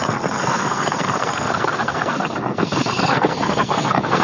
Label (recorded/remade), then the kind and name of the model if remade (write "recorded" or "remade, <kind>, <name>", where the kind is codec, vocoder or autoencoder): remade, codec, SNAC